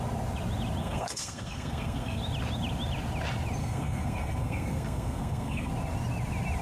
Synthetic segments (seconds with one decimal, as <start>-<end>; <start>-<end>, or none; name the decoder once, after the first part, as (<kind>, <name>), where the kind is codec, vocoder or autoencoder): 0.8-2.2 (codec, SNAC); 3.6-5.7